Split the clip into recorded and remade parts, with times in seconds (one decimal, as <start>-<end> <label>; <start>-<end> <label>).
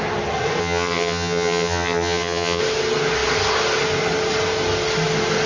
0.0-0.6 recorded; 0.6-2.6 remade; 2.6-5.5 recorded